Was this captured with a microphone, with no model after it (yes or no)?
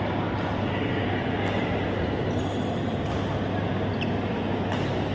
yes